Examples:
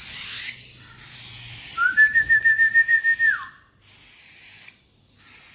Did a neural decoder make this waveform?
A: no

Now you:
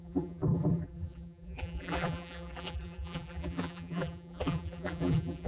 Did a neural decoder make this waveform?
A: yes